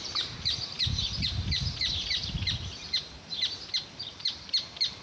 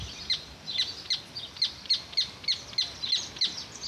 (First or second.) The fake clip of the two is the first